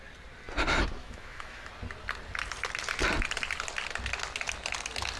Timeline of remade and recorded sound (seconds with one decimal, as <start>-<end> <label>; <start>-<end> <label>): 0.0-1.0 recorded; 1.0-1.7 remade; 1.7-5.2 recorded